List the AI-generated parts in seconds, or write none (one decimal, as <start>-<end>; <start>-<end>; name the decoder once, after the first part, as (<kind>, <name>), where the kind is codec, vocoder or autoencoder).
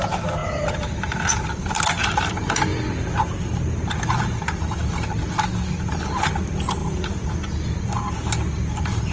0.4-2.3 (vocoder, BigVGAN v2); 6.8-7.4